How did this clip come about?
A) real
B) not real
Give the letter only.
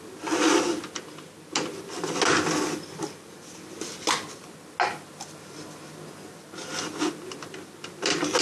A